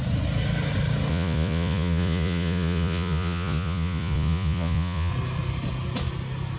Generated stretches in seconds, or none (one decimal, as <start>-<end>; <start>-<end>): 1.1-5.1